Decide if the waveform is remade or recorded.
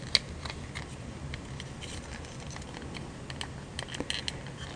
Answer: recorded